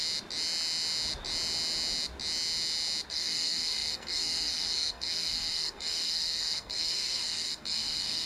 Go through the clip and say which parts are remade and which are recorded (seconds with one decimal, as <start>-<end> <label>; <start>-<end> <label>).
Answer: 0.0-3.1 recorded; 3.1-8.3 remade